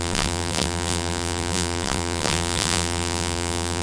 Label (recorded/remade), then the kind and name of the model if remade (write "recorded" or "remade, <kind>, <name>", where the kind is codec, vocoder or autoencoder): remade, vocoder, BigVGAN v2